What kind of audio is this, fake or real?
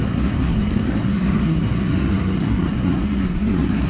fake